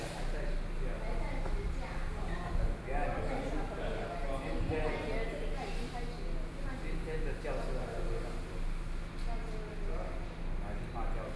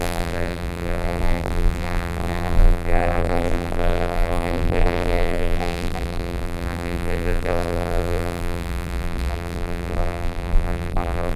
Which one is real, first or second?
first